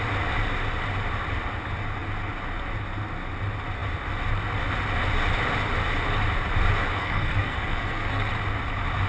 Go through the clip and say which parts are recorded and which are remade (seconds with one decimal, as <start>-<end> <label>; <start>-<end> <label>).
0.0-7.0 recorded; 7.0-8.3 remade; 8.3-9.1 recorded